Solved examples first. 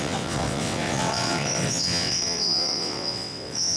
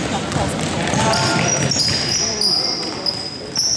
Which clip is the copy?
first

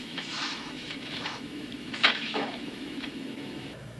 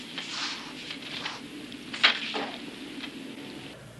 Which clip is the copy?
first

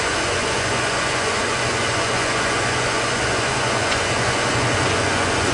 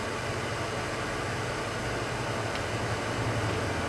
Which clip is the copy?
first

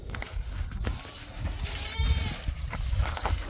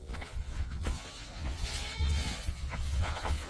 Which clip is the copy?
second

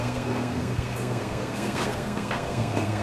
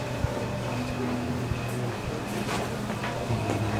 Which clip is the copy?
first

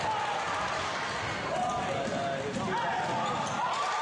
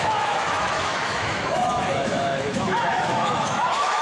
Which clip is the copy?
second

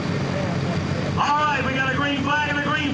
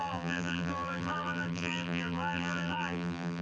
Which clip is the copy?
second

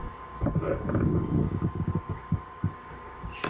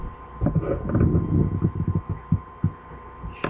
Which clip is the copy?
first